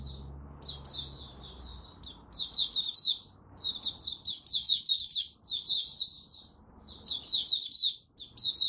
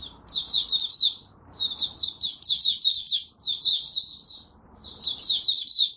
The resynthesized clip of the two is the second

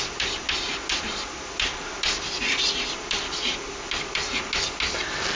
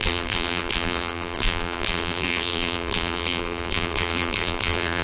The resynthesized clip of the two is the second